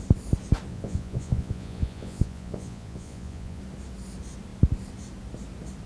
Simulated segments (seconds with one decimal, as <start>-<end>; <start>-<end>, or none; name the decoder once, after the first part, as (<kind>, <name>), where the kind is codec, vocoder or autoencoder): 0.7-3.6 (vocoder, Vocos)